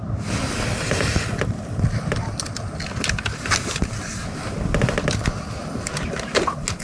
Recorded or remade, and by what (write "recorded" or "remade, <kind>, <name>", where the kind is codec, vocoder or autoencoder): recorded